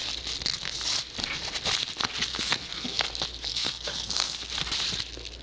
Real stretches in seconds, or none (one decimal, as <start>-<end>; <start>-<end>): 0.0-2.3; 3.1-3.5; 4.5-5.4